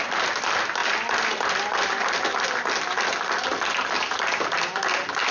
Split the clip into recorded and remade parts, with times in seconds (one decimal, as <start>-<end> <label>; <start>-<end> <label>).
0.0-5.3 recorded